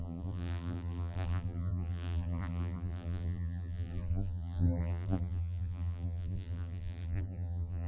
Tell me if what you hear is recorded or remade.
remade